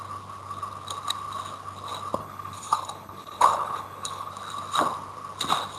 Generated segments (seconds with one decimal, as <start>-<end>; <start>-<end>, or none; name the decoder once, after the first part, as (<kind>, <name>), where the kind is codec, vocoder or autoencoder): 2.2-4.3 (codec, HILCodec)